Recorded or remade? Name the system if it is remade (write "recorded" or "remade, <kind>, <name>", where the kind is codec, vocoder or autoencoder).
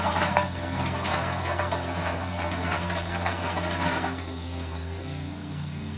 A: remade, codec, SNAC